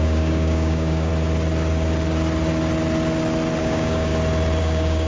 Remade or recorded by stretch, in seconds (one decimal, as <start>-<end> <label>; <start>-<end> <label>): 0.0-1.1 remade; 1.1-3.6 recorded; 3.6-4.1 remade; 4.1-4.6 recorded; 4.6-5.1 remade